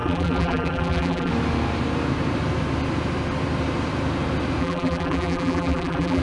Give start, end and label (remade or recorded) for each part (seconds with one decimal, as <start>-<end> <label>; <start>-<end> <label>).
0.0-1.3 remade; 1.3-4.6 recorded; 4.6-6.2 remade